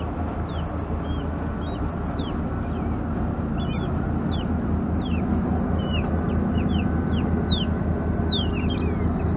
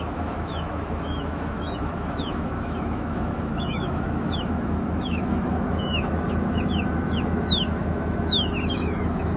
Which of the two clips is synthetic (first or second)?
second